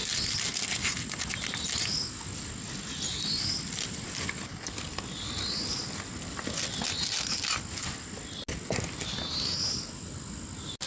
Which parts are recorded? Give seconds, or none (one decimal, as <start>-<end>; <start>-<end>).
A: 0.0-10.9